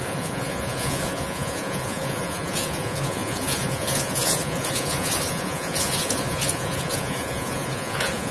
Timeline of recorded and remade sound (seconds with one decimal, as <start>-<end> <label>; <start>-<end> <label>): 0.0-8.3 remade